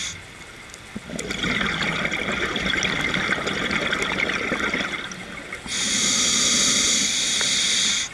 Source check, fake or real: real